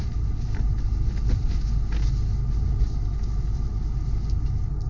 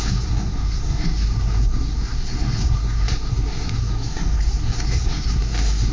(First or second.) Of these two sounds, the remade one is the second